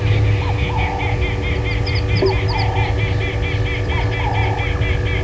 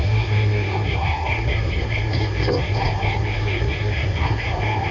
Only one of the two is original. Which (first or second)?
first